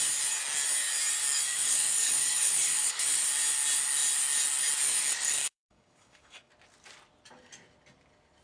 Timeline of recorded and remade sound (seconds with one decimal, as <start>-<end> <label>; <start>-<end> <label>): 0.0-1.5 recorded; 1.5-3.2 remade; 3.2-5.4 recorded; 5.4-6.5 remade; 6.5-8.4 recorded